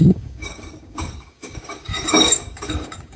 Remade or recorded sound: remade